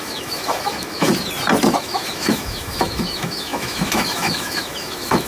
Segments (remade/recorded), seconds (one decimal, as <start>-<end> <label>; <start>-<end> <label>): 0.0-1.1 remade; 1.1-1.8 recorded; 1.8-5.3 remade